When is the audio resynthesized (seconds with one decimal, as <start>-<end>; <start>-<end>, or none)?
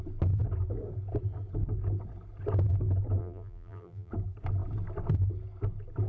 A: 3.2-4.1